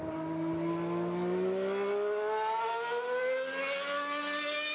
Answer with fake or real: real